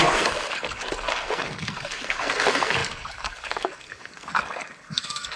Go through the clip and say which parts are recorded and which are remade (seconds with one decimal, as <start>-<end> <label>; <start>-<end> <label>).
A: 0.0-5.4 remade